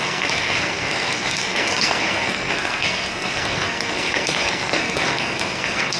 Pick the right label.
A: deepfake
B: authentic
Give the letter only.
A